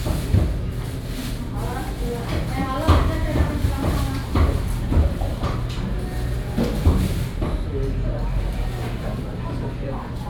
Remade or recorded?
recorded